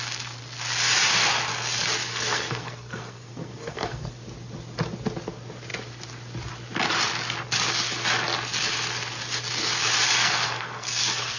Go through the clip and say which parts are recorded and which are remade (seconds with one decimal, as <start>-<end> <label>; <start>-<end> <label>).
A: 0.0-2.1 recorded; 2.1-4.1 remade; 4.1-10.2 recorded; 10.2-11.4 remade